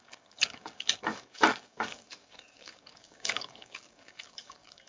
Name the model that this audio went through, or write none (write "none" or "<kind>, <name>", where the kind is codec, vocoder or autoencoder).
codec, DAC